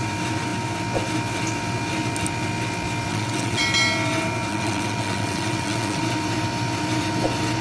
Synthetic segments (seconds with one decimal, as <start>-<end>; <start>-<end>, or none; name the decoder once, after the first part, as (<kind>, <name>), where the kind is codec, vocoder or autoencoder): 3.1-3.6 (vocoder, WaveNeXt); 4.5-6.0